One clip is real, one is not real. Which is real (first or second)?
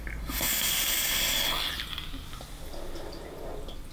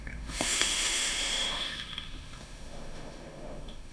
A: first